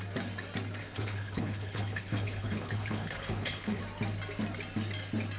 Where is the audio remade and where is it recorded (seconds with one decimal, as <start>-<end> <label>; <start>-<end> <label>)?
0.0-0.8 recorded; 0.8-3.8 remade; 3.8-5.4 recorded